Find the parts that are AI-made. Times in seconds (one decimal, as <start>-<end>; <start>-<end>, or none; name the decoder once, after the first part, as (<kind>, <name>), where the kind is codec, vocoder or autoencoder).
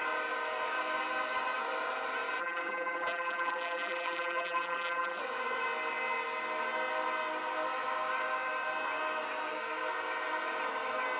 2.4-5.2 (vocoder, BigVGAN v2)